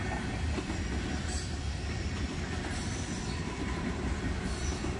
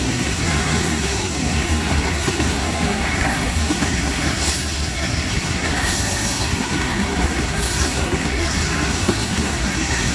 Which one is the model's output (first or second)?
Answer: second